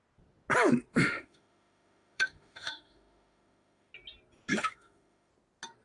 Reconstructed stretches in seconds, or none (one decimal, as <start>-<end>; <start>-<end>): 0.9-3.9; 4.5-5.3